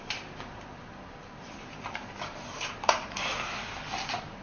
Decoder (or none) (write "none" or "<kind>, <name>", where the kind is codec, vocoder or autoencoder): vocoder, BigVGAN v2